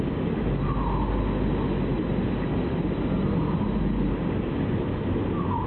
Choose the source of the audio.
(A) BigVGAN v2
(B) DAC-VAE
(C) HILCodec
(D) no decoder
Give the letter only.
D